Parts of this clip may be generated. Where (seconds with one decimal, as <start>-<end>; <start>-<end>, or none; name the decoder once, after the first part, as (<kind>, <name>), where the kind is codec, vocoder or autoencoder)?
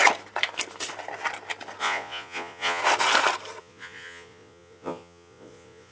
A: 1.8-2.8 (vocoder, Vocos); 3.6-5.9